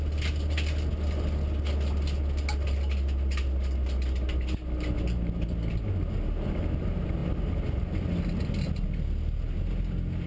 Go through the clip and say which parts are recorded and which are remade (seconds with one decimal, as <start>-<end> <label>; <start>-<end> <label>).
0.0-10.3 recorded